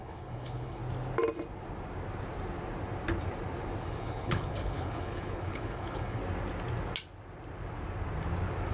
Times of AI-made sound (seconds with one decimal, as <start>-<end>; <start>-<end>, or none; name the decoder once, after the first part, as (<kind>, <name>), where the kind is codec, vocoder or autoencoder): 0.0-0.8 (codec, HILCodec); 3.8-6.2